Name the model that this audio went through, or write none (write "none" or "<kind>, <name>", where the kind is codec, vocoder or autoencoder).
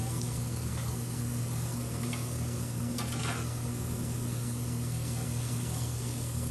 codec, SNAC